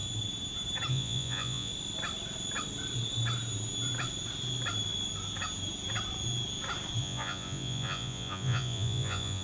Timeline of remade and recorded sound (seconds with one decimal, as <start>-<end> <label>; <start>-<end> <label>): 0.0-0.9 recorded; 0.9-1.7 remade; 1.7-7.0 recorded; 7.0-9.4 remade